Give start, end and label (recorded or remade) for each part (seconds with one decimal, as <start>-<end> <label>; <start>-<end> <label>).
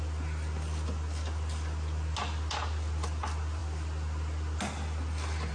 0.0-5.5 recorded